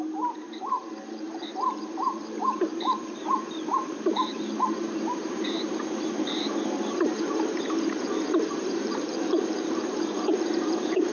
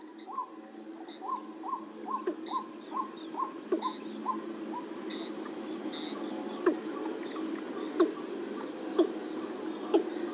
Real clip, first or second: second